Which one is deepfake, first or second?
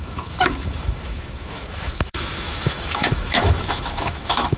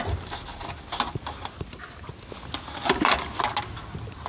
first